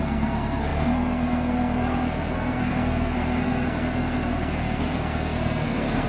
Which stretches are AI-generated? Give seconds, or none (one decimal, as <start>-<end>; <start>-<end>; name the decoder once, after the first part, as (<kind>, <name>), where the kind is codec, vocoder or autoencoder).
0.0-6.1 (codec, SNAC)